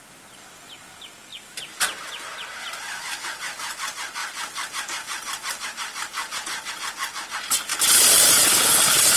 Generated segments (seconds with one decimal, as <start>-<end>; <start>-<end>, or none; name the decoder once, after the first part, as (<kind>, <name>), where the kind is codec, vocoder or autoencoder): 1.3-2.1 (vocoder, BigVGAN v2); 4.2-6.7